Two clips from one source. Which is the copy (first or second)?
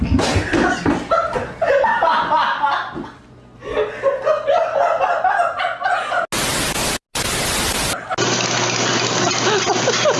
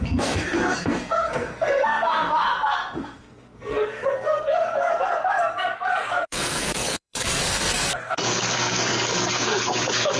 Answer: second